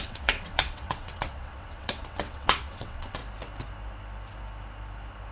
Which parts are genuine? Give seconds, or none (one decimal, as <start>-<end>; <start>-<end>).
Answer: 3.2-5.3